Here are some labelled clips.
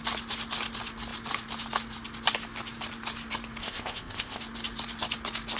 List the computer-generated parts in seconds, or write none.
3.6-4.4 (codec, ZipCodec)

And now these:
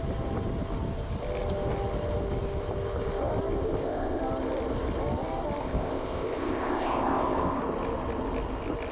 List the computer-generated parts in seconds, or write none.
3.6-4.2 (codec, ZipCodec); 5.6-7.6

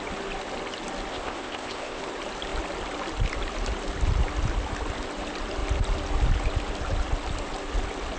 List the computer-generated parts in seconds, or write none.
1.1-2.0 (codec, ZipCodec)

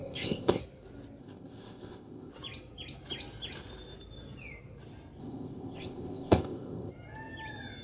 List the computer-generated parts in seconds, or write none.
0.0-0.6 (codec, ZipCodec); 1.2-2.3; 5.2-6.9

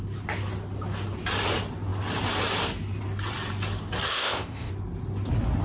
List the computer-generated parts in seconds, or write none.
4.1-4.7 (codec, ZipCodec)